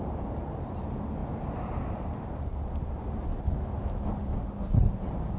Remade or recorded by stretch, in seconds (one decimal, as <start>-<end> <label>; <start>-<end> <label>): 0.0-5.4 recorded